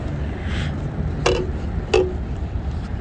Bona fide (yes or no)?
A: yes